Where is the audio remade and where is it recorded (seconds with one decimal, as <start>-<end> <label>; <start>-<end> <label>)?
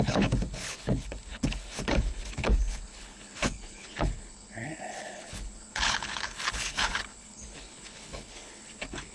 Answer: 0.0-9.1 remade